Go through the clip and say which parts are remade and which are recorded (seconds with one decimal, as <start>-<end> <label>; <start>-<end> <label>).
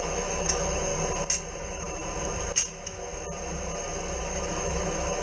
0.0-0.9 remade; 0.9-1.5 recorded; 1.5-2.0 remade; 2.0-2.7 recorded; 2.7-3.1 remade; 3.1-4.2 recorded; 4.2-5.2 remade